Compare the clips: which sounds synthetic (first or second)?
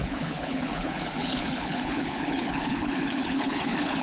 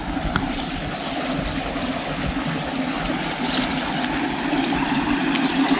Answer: first